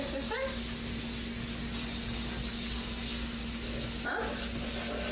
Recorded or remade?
recorded